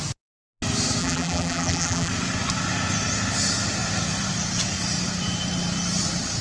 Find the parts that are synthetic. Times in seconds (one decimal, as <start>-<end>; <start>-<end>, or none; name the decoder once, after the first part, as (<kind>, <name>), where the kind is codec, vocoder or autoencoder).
1.0-2.1 (vocoder, BigVGAN v2)